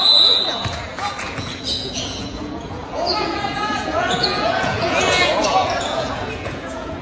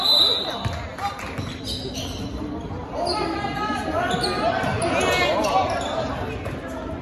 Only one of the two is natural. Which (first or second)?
second